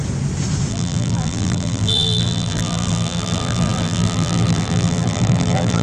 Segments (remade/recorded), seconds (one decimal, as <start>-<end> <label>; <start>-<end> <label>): 0.0-0.7 recorded; 0.7-5.8 remade